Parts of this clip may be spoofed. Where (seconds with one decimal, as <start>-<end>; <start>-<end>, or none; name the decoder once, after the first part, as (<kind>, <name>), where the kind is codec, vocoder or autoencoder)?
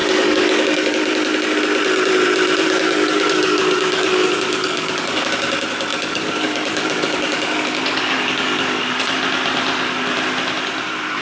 0.0-1.0 (codec, DAC); 2.6-5.3; 5.9-9.0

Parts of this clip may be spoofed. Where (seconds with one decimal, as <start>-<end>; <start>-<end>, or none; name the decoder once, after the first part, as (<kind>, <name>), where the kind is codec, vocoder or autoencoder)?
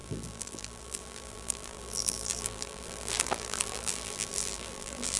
0.0-5.2 (vocoder, BigVGAN v2)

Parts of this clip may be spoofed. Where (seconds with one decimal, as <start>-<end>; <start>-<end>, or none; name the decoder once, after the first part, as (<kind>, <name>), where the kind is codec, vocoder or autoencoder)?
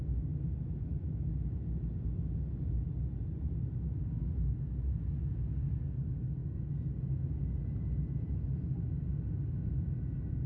none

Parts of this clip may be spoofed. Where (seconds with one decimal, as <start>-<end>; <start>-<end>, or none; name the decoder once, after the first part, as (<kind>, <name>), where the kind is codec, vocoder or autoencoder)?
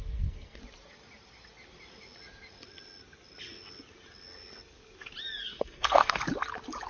0.0-0.6 (codec, SNAC); 5.4-6.2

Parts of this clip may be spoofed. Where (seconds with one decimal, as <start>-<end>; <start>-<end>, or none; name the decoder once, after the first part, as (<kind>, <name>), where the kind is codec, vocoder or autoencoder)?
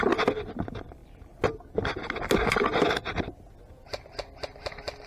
none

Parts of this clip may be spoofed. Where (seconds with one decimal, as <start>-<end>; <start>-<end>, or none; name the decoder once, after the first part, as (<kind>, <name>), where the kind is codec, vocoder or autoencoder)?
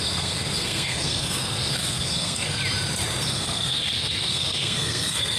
0.0-2.6 (codec, SNAC); 3.3-5.4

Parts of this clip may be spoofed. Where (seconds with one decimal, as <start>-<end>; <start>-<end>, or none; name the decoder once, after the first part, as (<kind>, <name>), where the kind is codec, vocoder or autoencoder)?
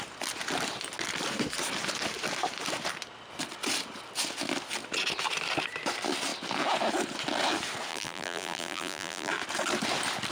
7.9-9.3 (vocoder, BigVGAN v2)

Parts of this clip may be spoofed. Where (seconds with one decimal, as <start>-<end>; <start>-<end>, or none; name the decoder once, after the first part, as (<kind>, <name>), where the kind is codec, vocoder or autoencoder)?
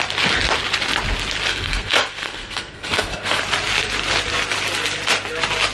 1.5-3.4 (codec, SNAC)